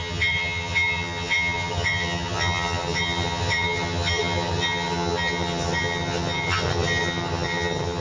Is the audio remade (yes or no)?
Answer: yes